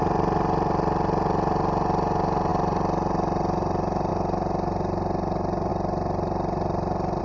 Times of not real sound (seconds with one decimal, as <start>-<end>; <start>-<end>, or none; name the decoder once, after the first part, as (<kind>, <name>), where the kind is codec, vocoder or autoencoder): none